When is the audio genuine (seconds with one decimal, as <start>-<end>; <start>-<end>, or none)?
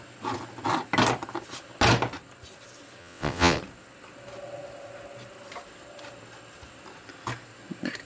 0.0-3.0; 3.6-8.1